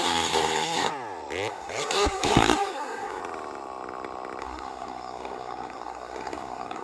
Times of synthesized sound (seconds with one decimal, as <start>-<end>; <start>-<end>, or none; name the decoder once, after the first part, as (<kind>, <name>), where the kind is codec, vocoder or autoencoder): 0.0-0.9 (codec, SNAC); 1.5-3.2; 4.4-6.8